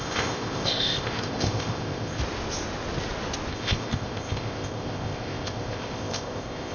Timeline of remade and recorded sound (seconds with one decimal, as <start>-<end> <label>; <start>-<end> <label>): 0.0-2.2 remade; 2.2-3.5 recorded; 3.5-6.7 remade